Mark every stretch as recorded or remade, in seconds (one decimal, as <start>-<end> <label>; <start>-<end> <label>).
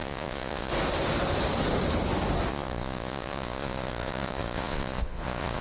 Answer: 0.0-0.7 remade; 0.7-2.5 recorded; 2.5-5.6 remade